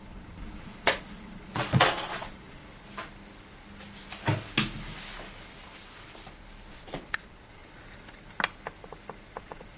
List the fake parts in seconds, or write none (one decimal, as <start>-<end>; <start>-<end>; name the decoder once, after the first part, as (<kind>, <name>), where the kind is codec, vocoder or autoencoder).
0.0-2.6 (vocoder, Vocos); 6.7-7.6; 9.4-9.8